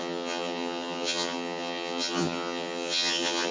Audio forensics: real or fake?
fake